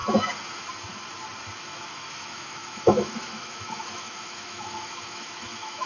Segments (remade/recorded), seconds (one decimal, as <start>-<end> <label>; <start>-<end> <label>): 0.0-1.6 recorded; 1.6-5.9 remade